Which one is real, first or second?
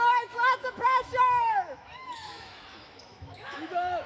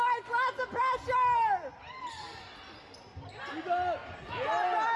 second